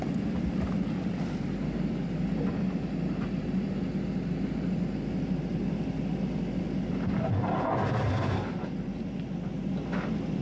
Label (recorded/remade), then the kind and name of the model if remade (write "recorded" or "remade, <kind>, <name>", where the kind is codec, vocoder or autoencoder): recorded